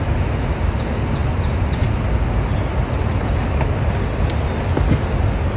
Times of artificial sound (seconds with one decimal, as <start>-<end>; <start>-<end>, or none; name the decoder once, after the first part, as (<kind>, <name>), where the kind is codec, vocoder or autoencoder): none